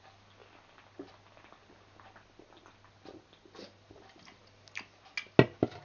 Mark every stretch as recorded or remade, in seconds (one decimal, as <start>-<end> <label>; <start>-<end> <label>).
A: 0.0-5.8 recorded